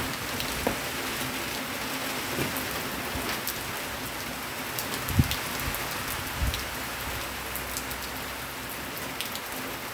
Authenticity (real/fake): real